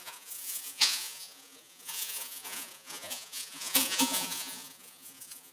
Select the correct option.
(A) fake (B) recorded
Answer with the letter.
A